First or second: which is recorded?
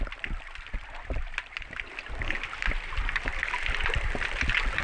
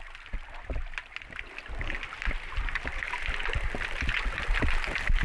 second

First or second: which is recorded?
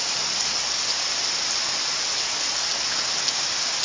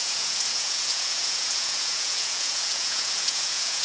first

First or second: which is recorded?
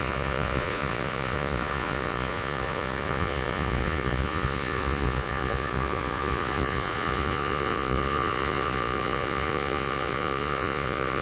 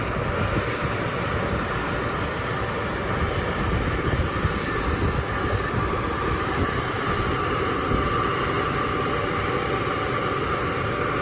second